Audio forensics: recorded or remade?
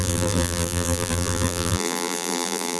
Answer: remade